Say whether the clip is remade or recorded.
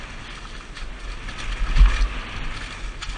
recorded